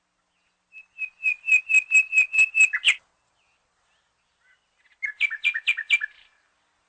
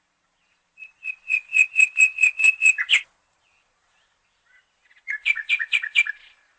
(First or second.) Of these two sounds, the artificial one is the second